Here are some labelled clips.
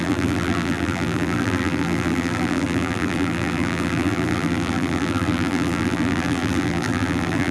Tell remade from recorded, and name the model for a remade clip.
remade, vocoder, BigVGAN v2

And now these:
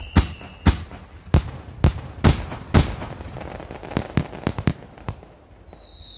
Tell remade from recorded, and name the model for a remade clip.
recorded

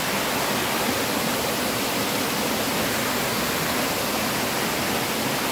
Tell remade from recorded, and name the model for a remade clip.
recorded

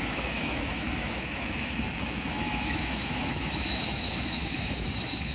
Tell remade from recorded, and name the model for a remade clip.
remade, autoencoder, DAC-VAE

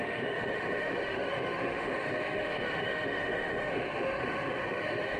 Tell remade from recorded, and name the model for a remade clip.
remade, autoencoder, DAC-VAE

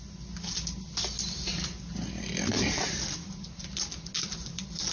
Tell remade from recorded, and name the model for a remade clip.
recorded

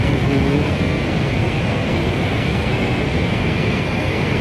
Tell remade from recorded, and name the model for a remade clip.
remade, codec, SNAC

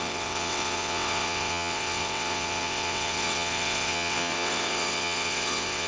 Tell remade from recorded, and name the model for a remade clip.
remade, vocoder, WaveNeXt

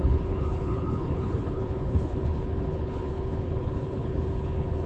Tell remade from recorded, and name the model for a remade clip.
remade, codec, HILCodec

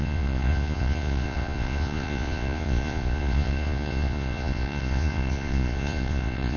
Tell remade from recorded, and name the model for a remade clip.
remade, vocoder, Vocos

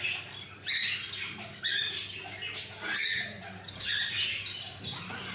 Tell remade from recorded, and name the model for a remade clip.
recorded